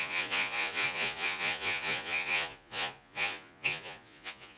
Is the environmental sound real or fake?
fake